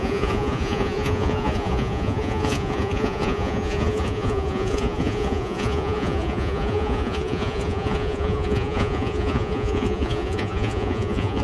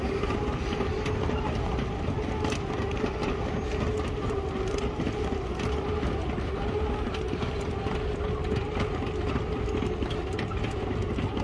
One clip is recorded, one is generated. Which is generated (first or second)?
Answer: first